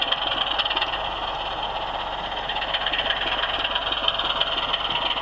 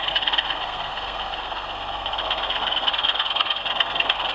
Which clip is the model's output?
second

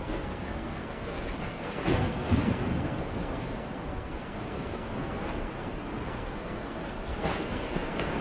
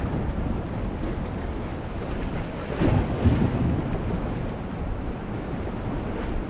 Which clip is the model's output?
first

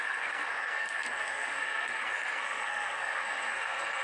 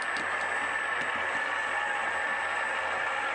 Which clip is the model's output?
first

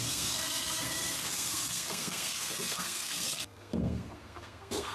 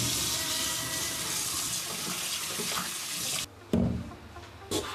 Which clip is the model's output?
first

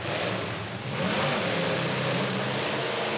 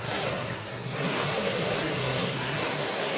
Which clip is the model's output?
second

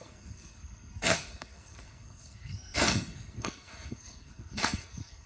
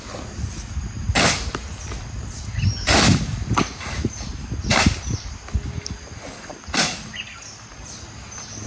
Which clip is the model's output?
first